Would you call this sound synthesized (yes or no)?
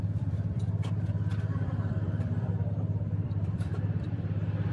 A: yes